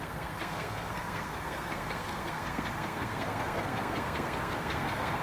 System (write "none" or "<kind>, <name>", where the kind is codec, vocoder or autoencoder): codec, SNAC